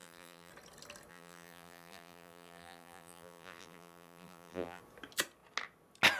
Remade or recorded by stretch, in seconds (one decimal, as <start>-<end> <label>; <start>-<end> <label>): 0.0-0.5 remade; 0.5-1.1 recorded; 1.1-4.8 remade; 4.8-6.2 recorded